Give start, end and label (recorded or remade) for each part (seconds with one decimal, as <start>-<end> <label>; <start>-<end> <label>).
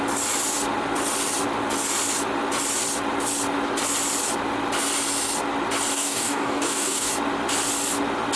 0.0-5.9 recorded; 5.9-7.1 remade; 7.1-8.4 recorded